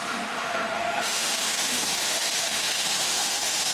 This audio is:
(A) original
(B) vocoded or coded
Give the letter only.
B